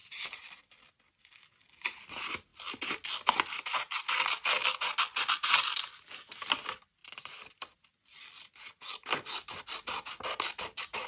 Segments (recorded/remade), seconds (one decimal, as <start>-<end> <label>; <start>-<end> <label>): 0.0-11.1 recorded